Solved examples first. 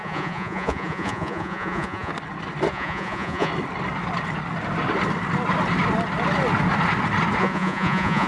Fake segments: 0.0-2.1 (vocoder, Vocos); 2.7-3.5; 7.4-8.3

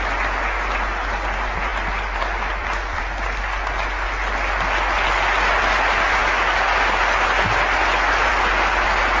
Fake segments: none

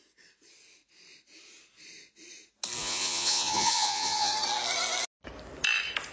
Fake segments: 2.8-4.3 (vocoder, Vocos)

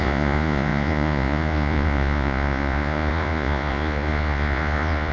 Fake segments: 0.0-5.1 (vocoder, Vocos)

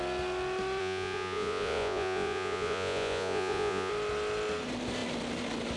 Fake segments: 0.8-3.9 (vocoder, Vocos)

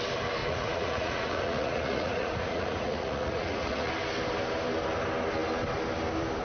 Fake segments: 0.4-3.9 (vocoder, Vocos)

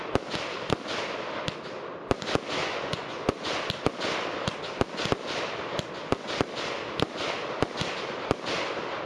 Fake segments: 2.6-3.6 (vocoder, Vocos)